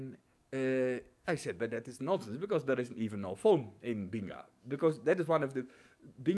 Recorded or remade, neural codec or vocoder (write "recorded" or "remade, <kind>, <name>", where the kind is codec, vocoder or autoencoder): remade, codec, DAC